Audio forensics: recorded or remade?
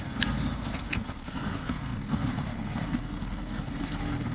remade